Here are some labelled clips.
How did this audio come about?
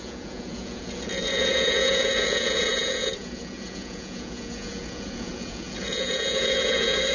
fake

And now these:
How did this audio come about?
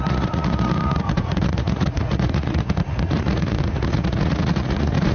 fake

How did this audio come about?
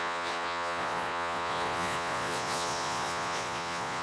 fake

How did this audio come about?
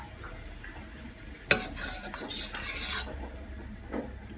real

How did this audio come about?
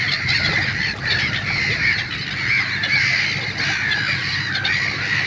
real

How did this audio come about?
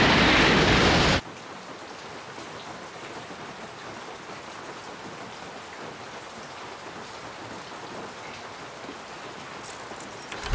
real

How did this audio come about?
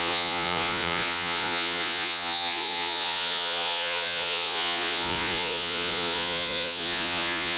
fake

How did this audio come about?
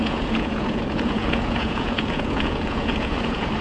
fake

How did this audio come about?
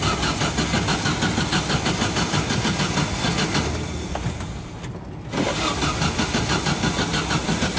real